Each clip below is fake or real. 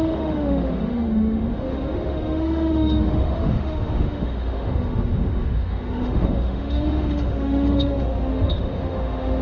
fake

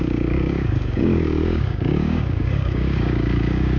fake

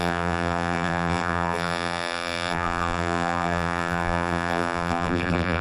fake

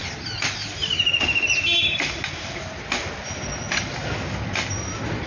real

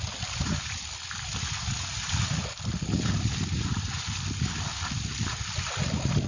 real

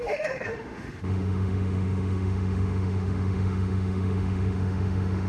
fake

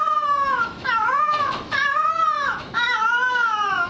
fake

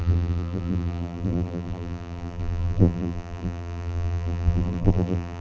fake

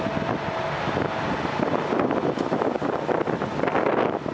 real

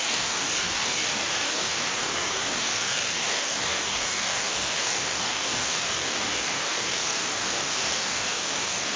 fake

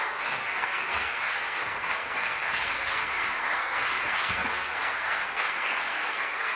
fake